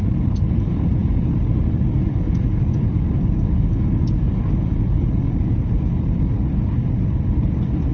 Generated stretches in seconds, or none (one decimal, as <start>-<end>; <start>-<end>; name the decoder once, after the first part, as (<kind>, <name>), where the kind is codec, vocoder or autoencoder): none